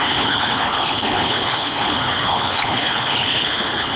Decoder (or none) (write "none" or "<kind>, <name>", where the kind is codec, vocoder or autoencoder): codec, HILCodec